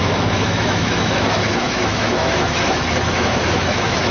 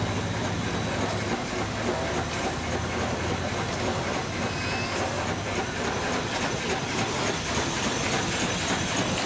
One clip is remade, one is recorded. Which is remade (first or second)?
first